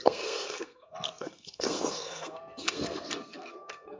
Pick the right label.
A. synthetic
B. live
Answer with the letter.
A